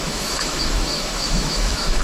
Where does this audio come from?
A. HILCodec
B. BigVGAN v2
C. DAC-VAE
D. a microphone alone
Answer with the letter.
C